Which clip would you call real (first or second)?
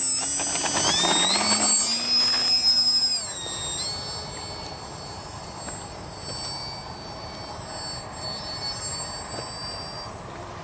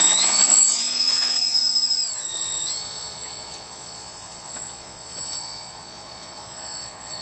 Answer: first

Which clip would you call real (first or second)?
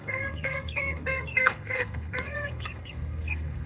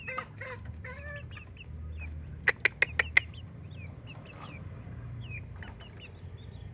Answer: second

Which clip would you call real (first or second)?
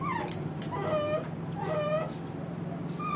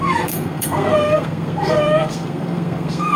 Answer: first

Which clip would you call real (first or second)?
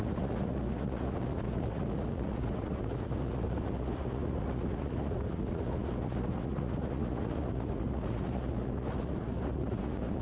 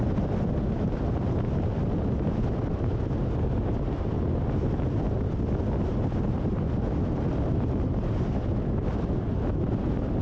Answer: second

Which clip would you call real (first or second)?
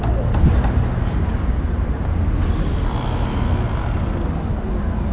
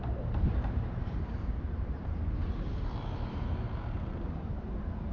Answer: first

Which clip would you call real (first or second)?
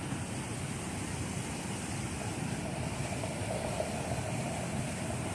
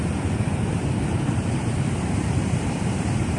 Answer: first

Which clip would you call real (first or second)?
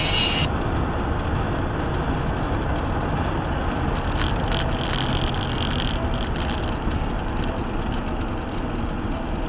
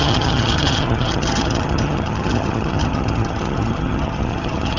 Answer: first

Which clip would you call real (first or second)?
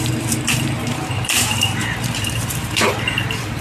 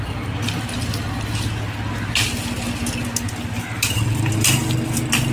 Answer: second